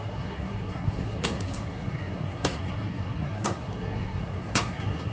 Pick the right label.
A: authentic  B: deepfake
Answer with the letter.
B